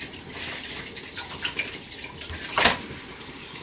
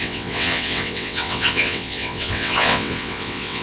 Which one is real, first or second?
first